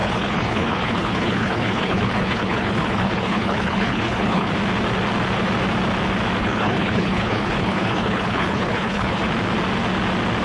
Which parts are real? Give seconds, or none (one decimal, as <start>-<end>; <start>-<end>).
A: 4.5-6.4; 9.2-10.4

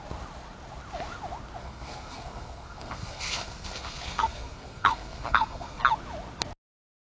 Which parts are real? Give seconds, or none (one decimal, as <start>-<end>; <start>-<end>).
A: 0.0-1.6; 5.8-7.0

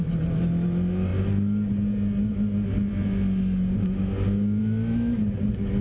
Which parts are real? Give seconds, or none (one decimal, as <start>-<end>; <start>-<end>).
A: 0.0-5.8

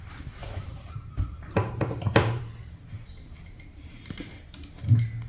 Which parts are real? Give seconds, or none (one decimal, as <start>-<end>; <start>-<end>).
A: 0.0-0.4; 2.4-3.4; 4.3-5.3